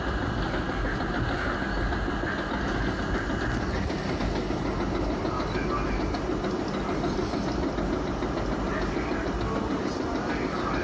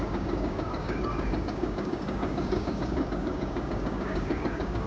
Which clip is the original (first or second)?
first